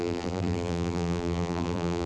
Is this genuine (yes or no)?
no